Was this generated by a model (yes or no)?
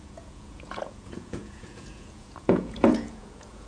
yes